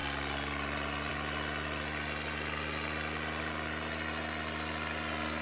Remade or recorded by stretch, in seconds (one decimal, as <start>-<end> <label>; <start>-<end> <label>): 0.0-5.4 recorded